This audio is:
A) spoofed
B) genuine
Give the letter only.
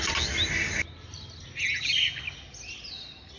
B